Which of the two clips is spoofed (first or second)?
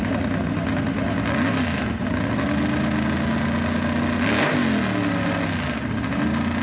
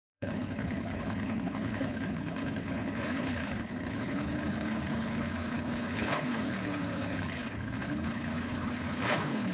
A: second